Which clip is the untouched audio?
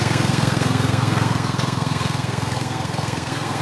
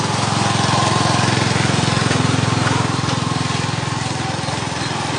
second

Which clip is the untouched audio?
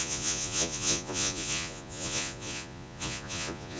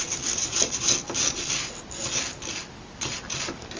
second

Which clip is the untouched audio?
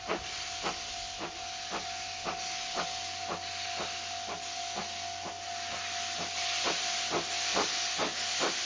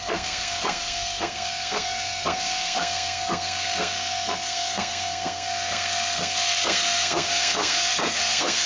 first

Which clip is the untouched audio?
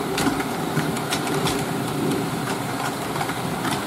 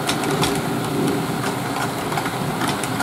second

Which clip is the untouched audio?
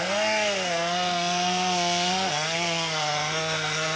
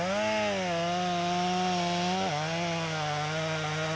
second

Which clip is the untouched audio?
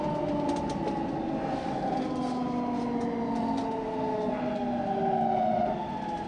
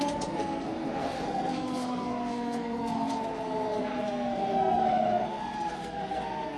first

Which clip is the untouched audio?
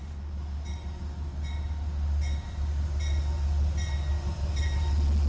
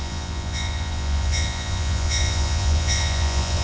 first